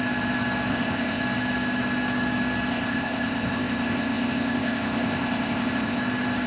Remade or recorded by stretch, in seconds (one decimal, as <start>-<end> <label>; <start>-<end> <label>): 0.0-0.7 recorded; 0.7-1.2 remade; 1.2-2.7 recorded; 2.7-6.0 remade; 6.0-6.5 recorded